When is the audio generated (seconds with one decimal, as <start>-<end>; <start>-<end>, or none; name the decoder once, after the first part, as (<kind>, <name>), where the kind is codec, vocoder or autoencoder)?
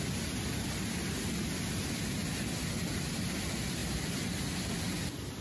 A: 3.8-4.4 (vocoder, BigVGAN v2)